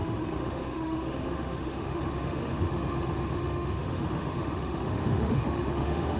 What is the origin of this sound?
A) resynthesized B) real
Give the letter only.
A